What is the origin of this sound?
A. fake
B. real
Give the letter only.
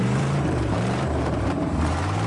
A